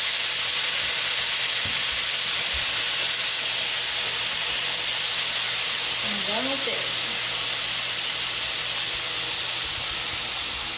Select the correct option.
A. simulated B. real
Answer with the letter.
B